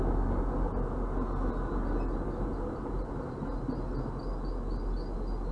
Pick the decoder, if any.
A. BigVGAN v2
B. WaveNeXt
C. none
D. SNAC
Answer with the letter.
C